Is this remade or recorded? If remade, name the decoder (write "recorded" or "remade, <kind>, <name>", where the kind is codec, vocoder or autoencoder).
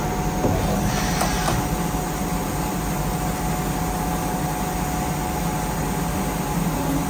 recorded